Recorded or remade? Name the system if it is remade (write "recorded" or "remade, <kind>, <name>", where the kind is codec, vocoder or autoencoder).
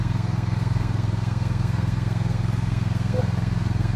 remade, codec, SNAC